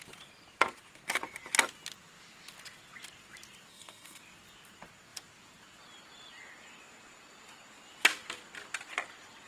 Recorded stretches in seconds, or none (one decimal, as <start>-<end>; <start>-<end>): 0.0-3.7; 4.2-9.5